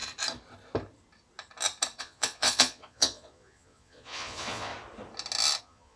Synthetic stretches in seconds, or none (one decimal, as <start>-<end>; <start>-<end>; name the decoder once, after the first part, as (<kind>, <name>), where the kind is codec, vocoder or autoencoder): 2.0-4.7 (vocoder, Vocos); 5.6-6.0